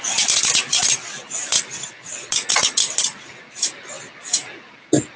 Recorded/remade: recorded